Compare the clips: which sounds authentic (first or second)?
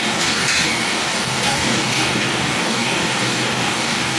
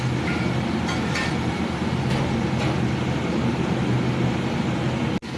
second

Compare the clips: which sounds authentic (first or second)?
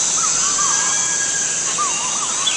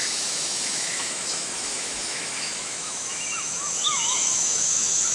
first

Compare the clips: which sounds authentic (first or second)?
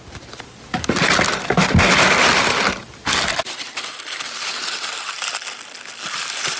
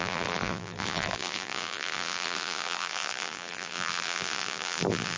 first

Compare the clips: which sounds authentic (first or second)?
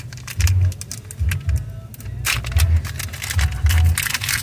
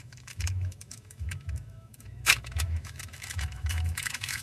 first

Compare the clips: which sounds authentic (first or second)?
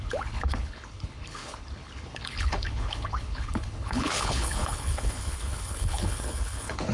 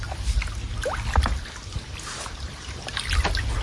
second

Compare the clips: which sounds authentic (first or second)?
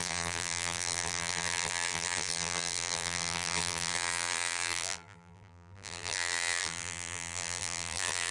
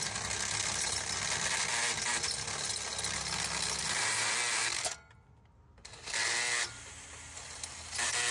second